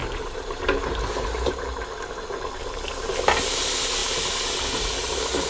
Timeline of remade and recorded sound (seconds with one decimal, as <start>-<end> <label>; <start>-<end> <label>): 0.0-1.5 remade; 1.5-5.5 recorded